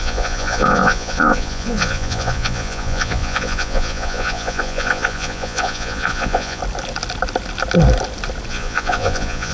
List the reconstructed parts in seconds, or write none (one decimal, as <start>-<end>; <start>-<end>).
0.0-6.6; 8.5-9.5